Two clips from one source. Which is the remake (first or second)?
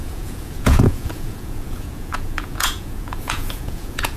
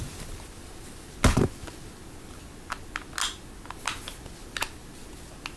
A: first